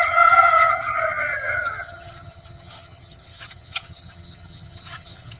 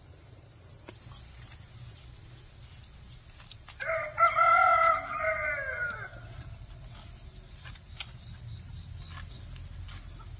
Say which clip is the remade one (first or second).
first